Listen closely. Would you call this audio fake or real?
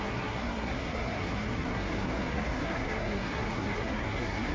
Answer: fake